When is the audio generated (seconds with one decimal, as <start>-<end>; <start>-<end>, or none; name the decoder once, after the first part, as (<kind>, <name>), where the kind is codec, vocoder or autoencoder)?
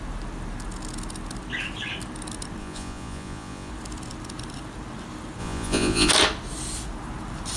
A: 2.6-3.7 (vocoder, Vocos); 5.4-6.1